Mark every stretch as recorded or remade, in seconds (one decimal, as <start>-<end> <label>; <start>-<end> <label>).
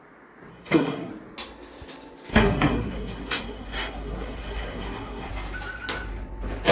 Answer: 0.0-0.5 recorded; 0.5-1.1 remade; 1.1-2.3 recorded; 2.3-5.3 remade; 5.3-6.7 recorded